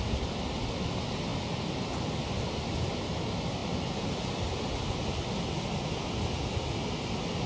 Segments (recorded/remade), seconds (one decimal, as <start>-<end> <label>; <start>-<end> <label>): 0.0-7.5 recorded

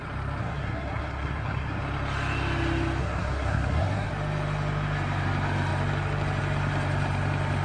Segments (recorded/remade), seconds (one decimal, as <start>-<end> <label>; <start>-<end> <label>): 0.0-0.4 recorded; 0.4-1.8 remade; 1.8-3.0 recorded; 3.0-4.1 remade; 4.1-7.6 recorded

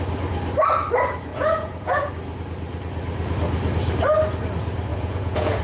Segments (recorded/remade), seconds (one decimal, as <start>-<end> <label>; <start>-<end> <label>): 0.0-1.3 recorded; 1.3-2.1 remade; 2.1-4.9 recorded; 4.9-5.6 remade

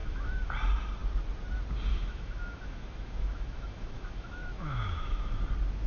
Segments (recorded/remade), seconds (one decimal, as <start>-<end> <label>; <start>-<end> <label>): 0.0-0.5 remade; 0.5-1.9 recorded; 1.9-5.4 remade; 5.4-5.9 recorded

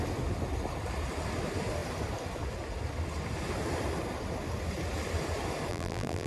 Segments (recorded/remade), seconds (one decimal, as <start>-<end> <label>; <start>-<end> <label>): 0.0-5.7 recorded; 5.7-6.3 remade

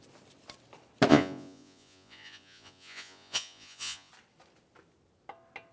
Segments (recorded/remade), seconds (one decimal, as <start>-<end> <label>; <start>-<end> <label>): 0.0-1.1 recorded; 1.1-4.1 remade; 4.1-5.7 recorded

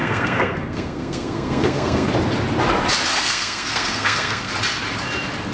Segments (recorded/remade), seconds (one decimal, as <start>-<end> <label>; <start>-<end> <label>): 0.0-2.1 remade; 2.1-3.1 recorded; 3.1-4.5 remade; 4.5-5.5 recorded

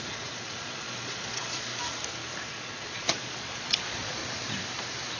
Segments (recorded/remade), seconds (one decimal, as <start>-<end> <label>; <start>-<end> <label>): 0.0-1.7 remade; 1.7-2.5 recorded; 2.5-4.2 remade; 4.2-5.2 recorded